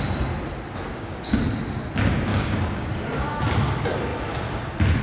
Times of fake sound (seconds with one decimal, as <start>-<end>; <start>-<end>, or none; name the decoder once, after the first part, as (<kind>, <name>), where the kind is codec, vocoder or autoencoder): 0.9-1.4 (codec, DAC); 2.3-3.4